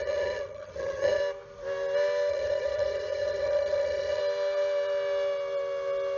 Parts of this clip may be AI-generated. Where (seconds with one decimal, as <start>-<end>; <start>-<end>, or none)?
0.0-1.2; 2.3-4.2